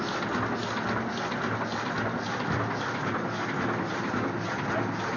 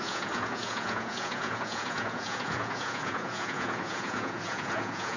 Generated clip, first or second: second